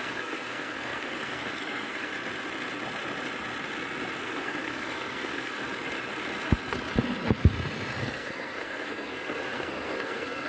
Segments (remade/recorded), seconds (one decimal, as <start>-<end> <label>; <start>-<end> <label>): 0.0-2.1 remade; 2.1-4.2 recorded; 4.2-5.6 remade; 5.6-8.0 recorded; 8.0-10.5 remade